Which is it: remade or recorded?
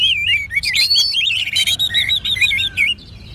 remade